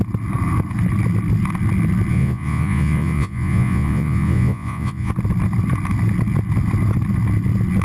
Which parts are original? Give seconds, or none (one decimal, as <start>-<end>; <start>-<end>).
0.0-2.1; 5.1-7.8